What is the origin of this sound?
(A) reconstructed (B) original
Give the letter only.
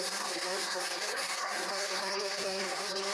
A